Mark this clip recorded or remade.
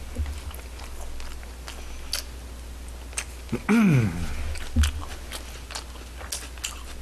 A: recorded